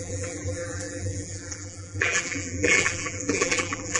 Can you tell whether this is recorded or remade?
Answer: remade